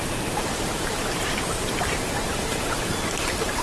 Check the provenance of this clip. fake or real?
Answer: fake